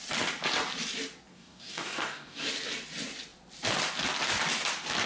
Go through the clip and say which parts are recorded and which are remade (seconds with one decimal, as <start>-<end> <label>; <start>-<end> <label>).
0.0-1.3 recorded; 1.3-2.5 remade; 2.5-5.1 recorded